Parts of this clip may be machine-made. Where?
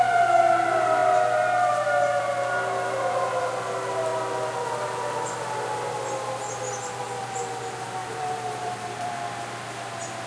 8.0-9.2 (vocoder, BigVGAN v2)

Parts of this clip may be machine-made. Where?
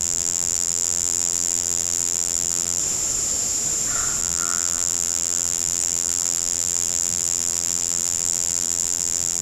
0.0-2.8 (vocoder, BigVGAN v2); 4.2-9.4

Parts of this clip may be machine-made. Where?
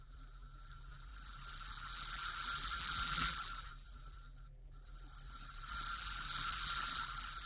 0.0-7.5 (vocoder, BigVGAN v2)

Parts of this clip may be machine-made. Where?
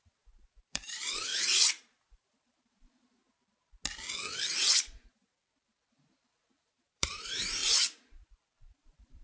0.0-1.3 (vocoder, BigVGAN v2); 2.1-3.2; 6.6-7.6; 8.7-9.2